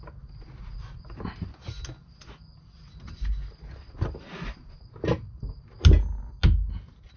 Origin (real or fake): real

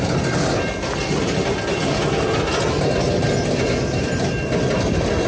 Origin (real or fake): real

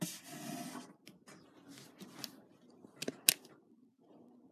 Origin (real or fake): real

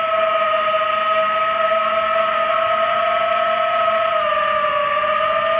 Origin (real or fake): fake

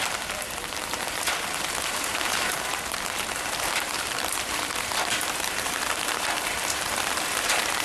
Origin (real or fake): fake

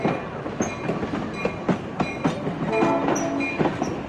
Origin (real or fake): real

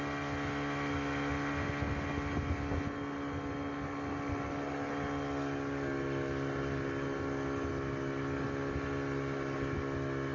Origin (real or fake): real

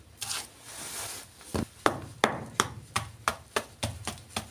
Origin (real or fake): real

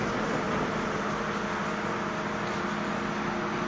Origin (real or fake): real